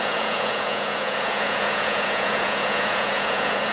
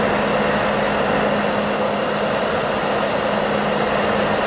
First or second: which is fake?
first